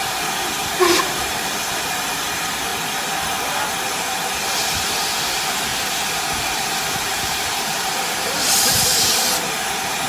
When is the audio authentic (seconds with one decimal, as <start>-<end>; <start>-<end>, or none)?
0.0-0.6; 2.2-7.1; 8.0-10.1